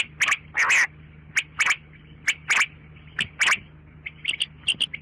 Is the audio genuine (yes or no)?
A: yes